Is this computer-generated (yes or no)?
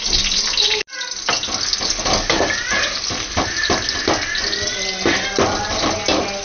no